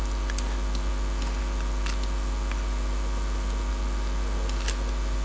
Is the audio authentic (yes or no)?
yes